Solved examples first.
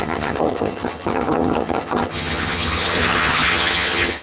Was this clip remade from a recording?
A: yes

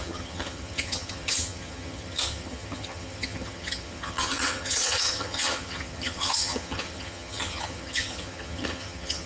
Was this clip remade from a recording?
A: yes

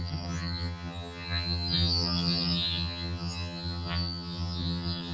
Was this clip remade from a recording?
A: yes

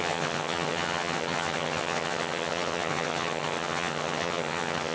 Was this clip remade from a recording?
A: yes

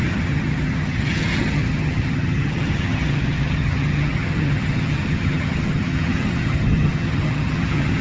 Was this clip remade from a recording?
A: yes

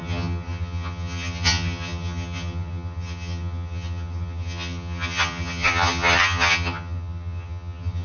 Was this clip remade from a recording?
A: yes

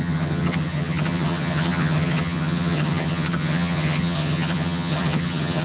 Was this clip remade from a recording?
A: yes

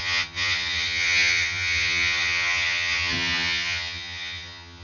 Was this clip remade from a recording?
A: yes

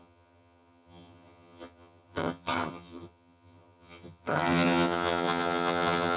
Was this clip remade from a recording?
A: yes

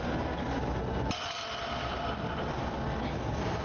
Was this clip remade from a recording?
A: no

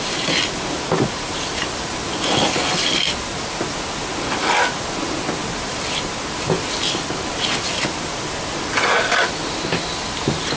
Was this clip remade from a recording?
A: no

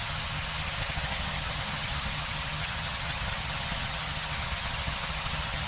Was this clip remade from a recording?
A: yes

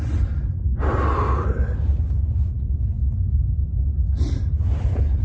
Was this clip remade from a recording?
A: no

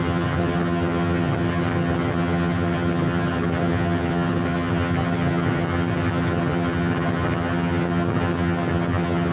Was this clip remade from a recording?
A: yes